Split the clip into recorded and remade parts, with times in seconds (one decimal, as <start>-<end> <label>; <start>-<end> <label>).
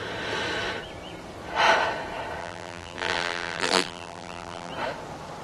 0.0-2.4 recorded; 2.4-4.7 remade; 4.7-5.4 recorded